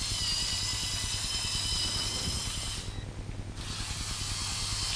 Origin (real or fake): real